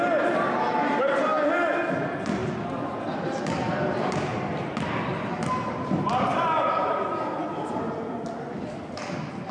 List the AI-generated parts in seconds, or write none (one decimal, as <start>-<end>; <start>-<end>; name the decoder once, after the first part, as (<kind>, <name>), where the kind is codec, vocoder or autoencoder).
2.4-3.4 (vocoder, BigVGAN v2)